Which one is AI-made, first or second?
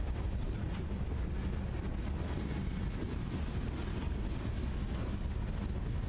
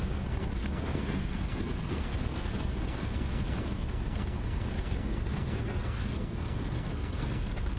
second